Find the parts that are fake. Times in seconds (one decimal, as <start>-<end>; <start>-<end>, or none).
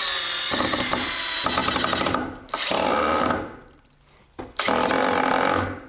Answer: none